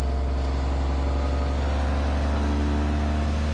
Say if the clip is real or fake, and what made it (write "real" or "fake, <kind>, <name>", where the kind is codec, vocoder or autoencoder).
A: real